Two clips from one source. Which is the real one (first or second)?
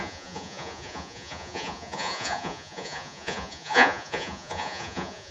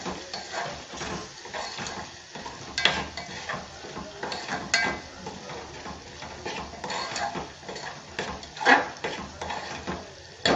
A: second